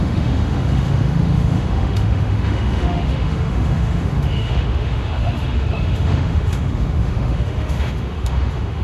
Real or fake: fake